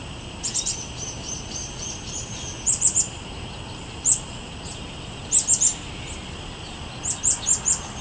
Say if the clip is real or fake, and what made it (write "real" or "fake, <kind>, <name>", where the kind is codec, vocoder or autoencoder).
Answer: real